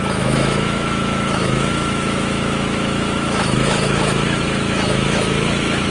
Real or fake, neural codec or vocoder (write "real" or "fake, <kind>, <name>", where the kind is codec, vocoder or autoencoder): fake, autoencoder, DAC-VAE